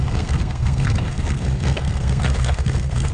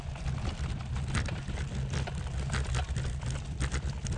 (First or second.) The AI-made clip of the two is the first